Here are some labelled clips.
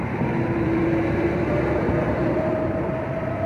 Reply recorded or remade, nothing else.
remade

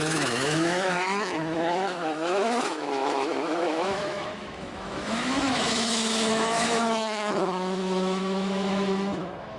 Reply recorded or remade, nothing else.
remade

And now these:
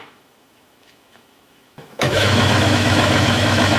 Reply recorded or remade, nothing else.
remade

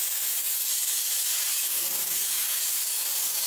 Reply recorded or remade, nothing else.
remade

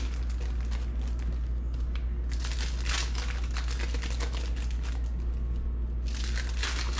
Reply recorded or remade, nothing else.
recorded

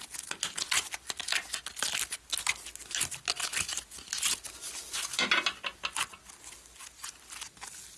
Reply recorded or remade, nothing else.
recorded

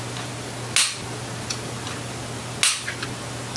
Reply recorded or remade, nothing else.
recorded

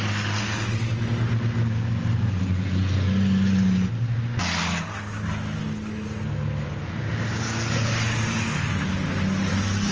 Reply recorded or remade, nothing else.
recorded